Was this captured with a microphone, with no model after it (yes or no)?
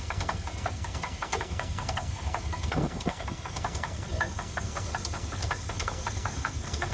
no